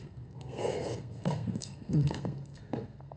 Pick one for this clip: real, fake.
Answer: fake